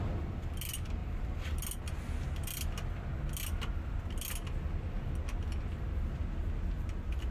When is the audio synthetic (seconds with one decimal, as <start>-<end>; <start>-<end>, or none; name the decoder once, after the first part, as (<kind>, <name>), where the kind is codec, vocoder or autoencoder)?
none